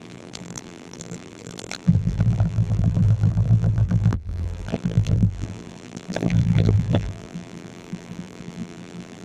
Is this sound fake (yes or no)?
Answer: yes